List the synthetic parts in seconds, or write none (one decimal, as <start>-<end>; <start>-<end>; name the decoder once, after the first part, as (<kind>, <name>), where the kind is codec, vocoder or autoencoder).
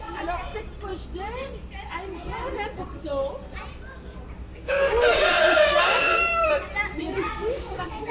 4.5-6.5 (codec, DAC); 7.0-8.1